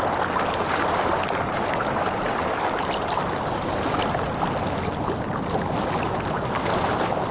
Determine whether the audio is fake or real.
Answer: real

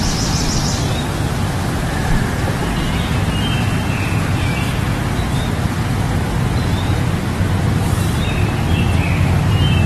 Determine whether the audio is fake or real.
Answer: real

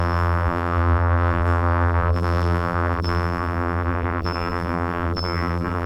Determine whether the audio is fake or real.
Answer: fake